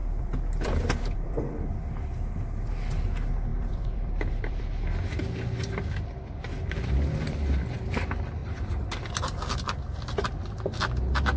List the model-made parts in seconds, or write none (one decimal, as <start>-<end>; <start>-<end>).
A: 0.0-2.7; 3.5-4.6; 8.4-9.1